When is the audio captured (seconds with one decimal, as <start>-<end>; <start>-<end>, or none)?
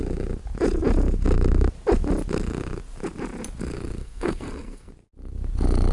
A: 0.0-4.0; 4.9-5.9